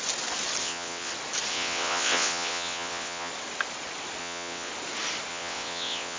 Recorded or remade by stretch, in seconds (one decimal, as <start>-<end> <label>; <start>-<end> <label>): 0.0-0.6 recorded; 0.6-1.1 remade; 1.1-1.5 recorded; 1.5-3.3 remade; 3.3-4.2 recorded; 4.2-4.7 remade; 4.7-5.3 recorded; 5.3-6.2 remade